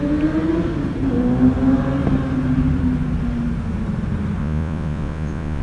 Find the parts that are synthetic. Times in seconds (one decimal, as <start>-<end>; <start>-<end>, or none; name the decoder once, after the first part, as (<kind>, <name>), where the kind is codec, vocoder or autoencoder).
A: 4.4-5.6 (vocoder, Vocos)